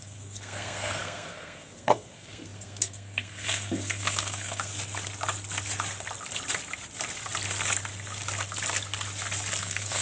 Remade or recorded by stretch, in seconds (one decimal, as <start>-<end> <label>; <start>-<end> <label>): 0.0-4.7 remade; 4.7-9.6 recorded; 9.6-10.0 remade